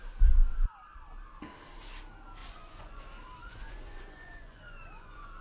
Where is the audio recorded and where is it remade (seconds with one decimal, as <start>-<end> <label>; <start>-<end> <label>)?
0.0-2.4 recorded; 2.4-3.0 remade; 3.0-3.4 recorded; 3.4-5.4 remade